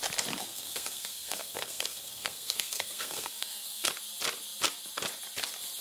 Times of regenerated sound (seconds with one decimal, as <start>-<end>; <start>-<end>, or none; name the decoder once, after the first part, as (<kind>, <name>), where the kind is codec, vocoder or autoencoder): 0.4-3.9 (codec, SNAC)